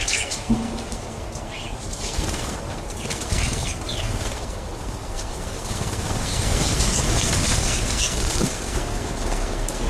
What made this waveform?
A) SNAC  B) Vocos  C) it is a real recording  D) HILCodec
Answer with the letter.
A